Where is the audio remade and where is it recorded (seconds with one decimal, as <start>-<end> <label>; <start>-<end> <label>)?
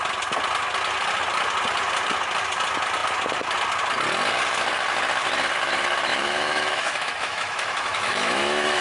0.0-6.1 recorded; 6.1-8.8 remade